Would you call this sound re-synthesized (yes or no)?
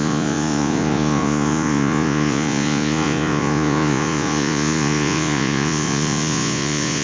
yes